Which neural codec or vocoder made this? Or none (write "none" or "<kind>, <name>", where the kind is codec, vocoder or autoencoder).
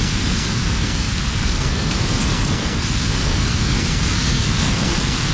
codec, SNAC